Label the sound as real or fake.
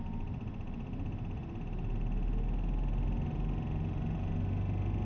real